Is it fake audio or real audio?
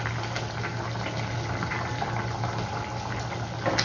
real